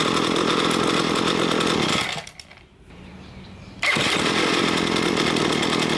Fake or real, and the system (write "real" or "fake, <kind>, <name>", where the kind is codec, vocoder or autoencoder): fake, vocoder, BigVGAN v2